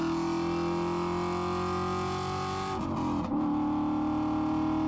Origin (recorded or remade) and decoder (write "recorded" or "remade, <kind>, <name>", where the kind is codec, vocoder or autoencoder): recorded